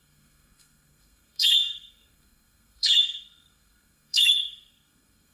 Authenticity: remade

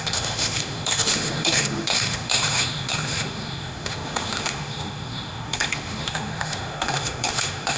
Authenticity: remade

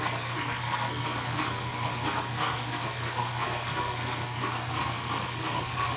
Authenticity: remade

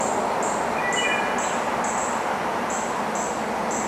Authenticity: recorded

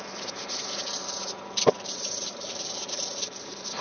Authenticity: remade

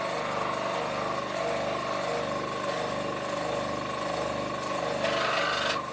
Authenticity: recorded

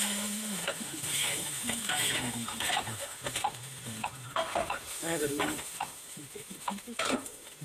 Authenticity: remade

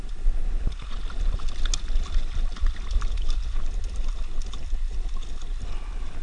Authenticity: recorded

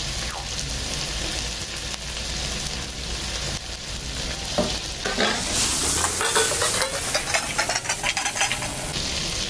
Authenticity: recorded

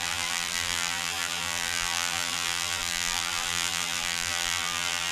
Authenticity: remade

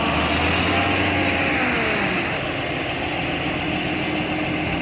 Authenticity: recorded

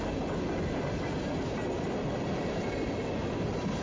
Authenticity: recorded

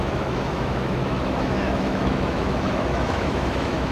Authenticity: remade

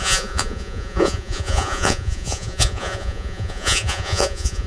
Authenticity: remade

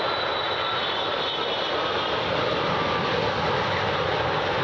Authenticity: recorded